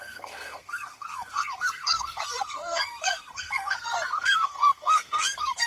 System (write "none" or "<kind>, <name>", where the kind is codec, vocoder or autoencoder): codec, SNAC